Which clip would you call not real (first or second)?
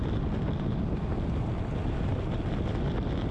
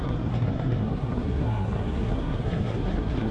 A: second